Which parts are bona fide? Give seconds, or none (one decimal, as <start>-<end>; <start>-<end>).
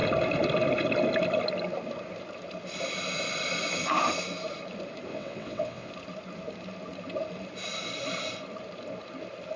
0.0-5.1; 5.9-9.6